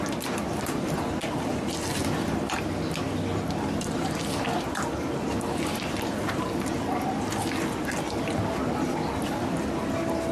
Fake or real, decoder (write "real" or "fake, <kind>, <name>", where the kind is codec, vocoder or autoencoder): real